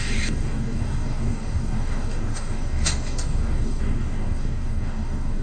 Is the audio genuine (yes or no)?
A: no